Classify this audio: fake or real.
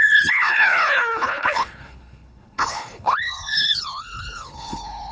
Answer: fake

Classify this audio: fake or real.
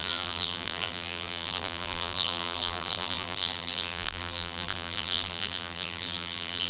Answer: fake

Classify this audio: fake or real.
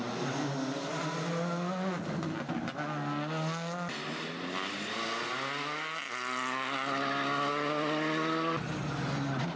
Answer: real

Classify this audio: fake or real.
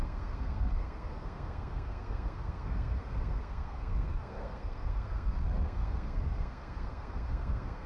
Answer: fake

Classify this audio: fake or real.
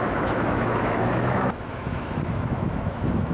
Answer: fake